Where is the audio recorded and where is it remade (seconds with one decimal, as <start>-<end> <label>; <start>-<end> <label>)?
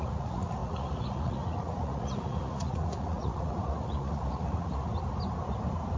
0.0-4.9 remade; 4.9-6.0 recorded